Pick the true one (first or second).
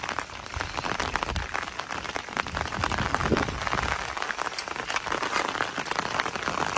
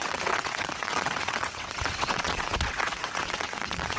first